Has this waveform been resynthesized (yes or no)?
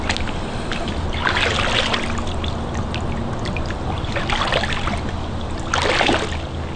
no